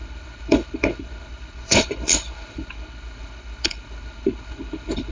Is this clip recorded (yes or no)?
no